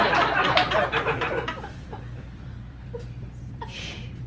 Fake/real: fake